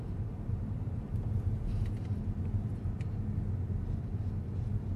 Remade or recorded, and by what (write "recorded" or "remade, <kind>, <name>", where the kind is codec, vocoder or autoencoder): recorded